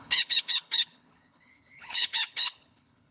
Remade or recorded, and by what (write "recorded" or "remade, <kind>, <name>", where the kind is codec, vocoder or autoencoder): remade, codec, HILCodec